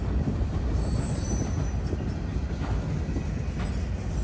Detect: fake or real real